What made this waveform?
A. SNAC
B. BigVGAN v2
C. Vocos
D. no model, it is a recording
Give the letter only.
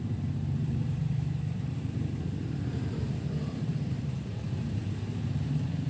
B